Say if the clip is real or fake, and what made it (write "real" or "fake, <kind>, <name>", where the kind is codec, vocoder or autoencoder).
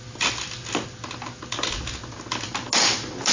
real